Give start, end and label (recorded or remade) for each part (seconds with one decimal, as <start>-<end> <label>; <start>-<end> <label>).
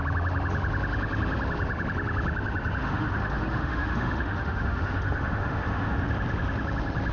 0.0-2.8 recorded; 2.8-6.1 remade; 6.1-7.1 recorded